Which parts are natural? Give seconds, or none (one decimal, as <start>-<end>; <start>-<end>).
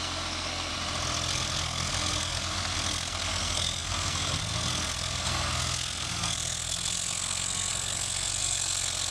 0.7-1.3